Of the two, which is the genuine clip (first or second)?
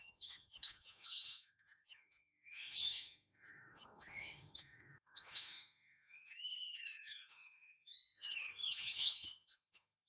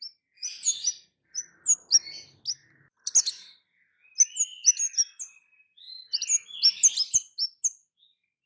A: second